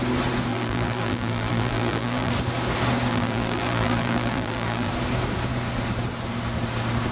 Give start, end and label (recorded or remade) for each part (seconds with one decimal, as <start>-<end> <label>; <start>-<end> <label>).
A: 0.0-0.5 recorded; 0.5-2.3 remade; 2.3-3.1 recorded; 3.1-4.9 remade; 4.9-7.1 recorded